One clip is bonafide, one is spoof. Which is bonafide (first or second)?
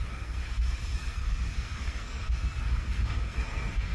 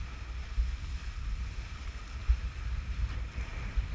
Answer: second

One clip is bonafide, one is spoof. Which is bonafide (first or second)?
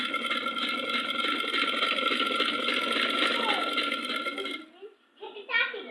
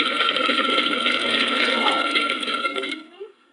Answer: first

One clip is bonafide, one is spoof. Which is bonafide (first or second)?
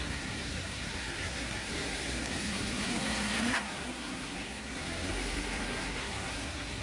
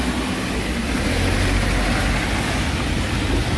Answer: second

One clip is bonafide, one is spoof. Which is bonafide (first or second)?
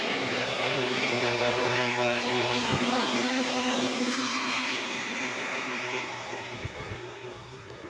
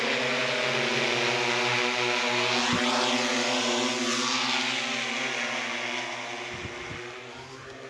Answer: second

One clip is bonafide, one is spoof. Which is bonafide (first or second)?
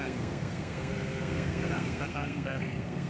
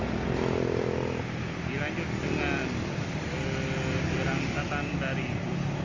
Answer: second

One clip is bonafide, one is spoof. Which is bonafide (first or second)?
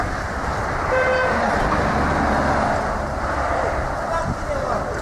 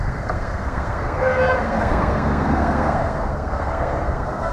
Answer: first